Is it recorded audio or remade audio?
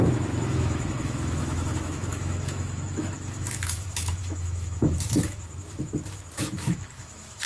remade